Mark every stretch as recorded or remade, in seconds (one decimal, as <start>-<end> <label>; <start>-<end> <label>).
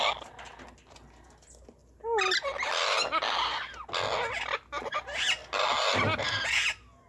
0.0-7.1 recorded